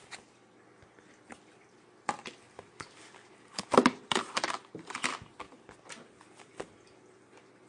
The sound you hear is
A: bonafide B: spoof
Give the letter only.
A